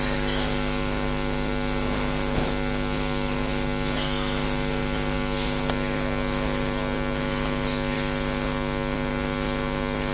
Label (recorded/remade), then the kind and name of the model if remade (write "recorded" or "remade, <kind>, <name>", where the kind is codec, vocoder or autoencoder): recorded